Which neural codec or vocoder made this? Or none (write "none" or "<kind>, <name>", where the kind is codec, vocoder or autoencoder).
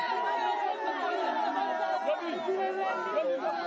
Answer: none